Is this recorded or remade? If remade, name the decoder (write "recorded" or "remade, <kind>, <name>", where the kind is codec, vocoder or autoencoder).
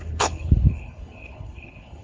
remade, codec, HILCodec